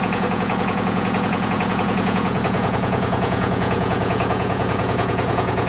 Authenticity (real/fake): fake